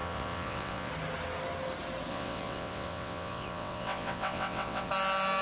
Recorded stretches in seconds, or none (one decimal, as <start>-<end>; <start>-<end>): 0.9-2.1; 4.9-5.4